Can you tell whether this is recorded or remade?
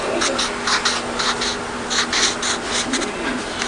recorded